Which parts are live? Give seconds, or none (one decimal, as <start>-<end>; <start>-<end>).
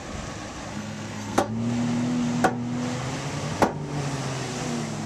0.0-0.7; 1.5-5.1